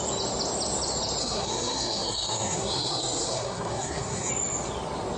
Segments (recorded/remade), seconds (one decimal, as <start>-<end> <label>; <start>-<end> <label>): 0.0-1.2 recorded; 1.2-4.3 remade; 4.3-5.2 recorded

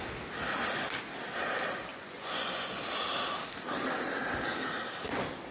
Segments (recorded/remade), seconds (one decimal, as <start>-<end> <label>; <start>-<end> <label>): 0.0-1.9 recorded; 1.9-2.8 remade; 2.8-5.5 recorded

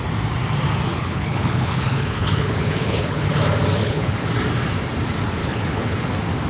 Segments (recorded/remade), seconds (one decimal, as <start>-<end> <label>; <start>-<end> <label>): 0.0-0.9 recorded; 0.9-3.3 remade; 3.3-3.8 recorded; 3.8-4.3 remade; 4.3-5.4 recorded; 5.4-6.1 remade; 6.1-6.5 recorded

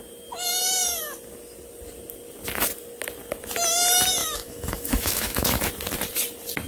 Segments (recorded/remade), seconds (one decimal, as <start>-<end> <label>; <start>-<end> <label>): 0.0-4.2 recorded; 4.2-5.7 remade; 5.7-6.7 recorded

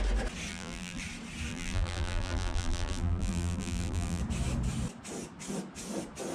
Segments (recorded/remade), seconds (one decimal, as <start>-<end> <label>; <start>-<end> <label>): 0.0-0.5 recorded; 0.5-1.0 remade; 1.0-1.5 recorded; 1.5-4.2 remade; 4.2-6.3 recorded

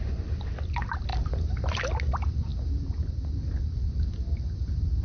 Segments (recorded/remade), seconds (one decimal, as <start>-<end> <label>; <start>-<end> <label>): 0.0-5.0 recorded